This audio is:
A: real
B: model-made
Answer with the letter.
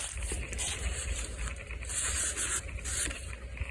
A